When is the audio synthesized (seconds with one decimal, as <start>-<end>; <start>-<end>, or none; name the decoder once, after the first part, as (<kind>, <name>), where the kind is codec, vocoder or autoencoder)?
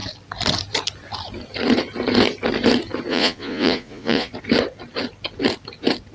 3.1-4.3 (vocoder, Vocos)